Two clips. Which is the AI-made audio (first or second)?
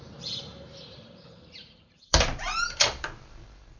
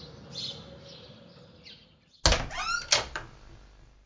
first